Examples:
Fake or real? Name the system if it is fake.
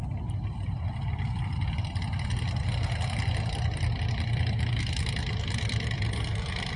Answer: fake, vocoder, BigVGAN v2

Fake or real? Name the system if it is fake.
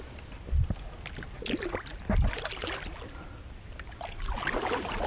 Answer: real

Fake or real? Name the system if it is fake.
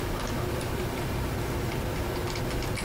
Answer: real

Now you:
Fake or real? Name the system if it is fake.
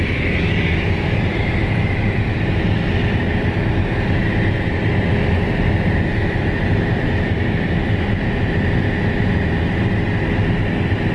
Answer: real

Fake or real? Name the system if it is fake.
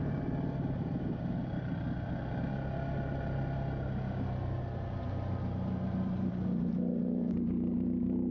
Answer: real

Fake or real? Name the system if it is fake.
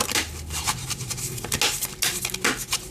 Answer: real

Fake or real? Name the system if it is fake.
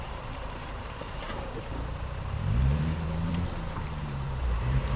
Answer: fake, vocoder, BigVGAN v2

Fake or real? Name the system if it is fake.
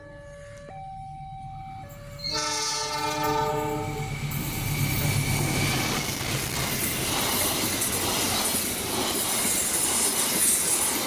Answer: real